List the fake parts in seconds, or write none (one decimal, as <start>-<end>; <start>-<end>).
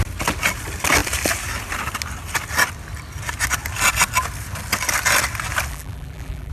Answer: 5.7-6.5